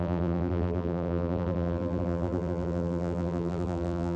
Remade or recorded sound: remade